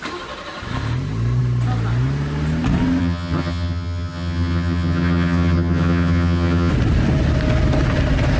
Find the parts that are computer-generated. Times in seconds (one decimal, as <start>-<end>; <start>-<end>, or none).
3.0-6.7